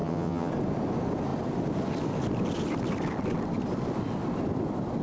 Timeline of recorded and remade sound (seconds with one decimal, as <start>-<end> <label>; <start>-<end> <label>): 0.0-0.5 remade; 0.5-5.0 recorded